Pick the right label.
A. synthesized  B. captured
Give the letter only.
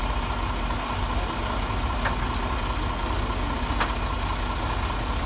B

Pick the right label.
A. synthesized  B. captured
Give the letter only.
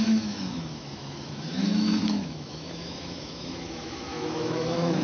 A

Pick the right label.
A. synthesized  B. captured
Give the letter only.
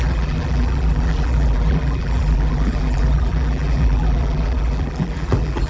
A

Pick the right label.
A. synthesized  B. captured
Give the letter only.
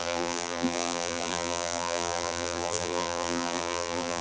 A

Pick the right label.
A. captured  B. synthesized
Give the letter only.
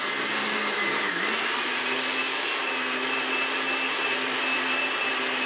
A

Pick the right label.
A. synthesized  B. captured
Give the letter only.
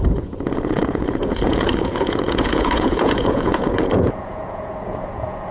A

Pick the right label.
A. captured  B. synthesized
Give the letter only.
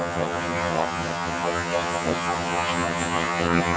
B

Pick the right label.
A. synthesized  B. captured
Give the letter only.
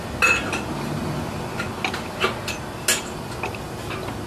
B